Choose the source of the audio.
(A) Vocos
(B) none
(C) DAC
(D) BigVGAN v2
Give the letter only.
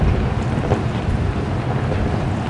B